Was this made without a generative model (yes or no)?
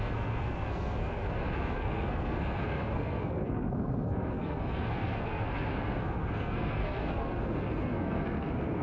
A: no